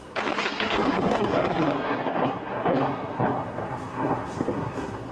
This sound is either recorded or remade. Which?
remade